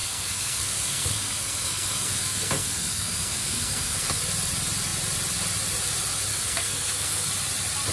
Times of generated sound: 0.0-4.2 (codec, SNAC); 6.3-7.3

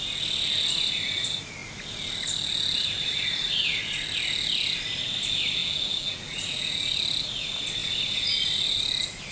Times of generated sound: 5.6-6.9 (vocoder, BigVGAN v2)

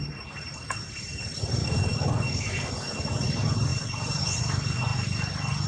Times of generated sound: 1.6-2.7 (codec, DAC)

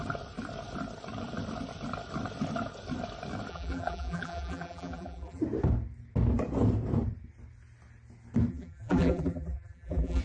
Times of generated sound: 3.5-5.4 (vocoder, BigVGAN v2); 8.5-10.2

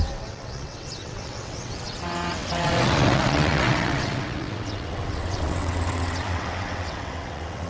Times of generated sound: 0.0-7.7 (vocoder, WaveNeXt)